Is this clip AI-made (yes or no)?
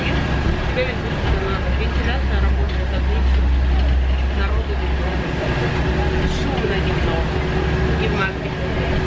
no